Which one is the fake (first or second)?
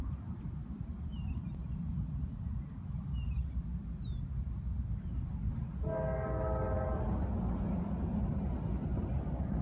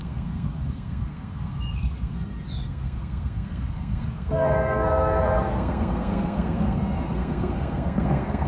second